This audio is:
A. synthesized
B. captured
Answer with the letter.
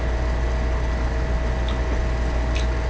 B